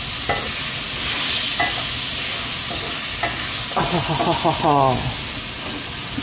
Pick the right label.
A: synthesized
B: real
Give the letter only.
B